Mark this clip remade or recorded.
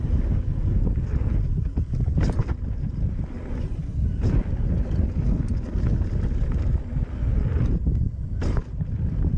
recorded